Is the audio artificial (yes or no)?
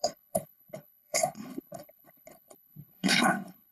yes